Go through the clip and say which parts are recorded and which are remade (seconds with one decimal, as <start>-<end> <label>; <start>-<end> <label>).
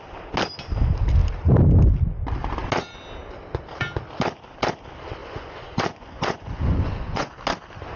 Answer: 0.0-5.2 recorded; 5.2-7.3 remade; 7.3-8.0 recorded